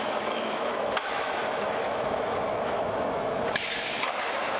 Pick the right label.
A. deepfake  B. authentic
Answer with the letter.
A